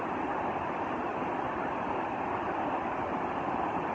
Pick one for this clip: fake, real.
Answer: real